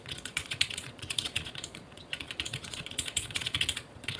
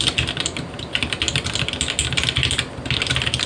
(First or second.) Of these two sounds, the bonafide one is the second